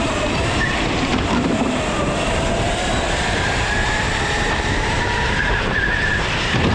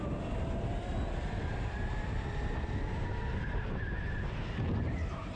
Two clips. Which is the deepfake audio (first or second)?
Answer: first